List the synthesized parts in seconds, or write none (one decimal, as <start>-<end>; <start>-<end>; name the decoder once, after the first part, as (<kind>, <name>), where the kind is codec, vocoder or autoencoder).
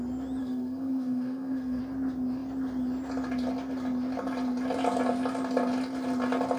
0.4-1.8 (codec, SNAC)